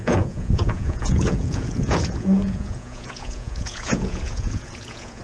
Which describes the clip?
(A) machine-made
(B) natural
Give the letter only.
A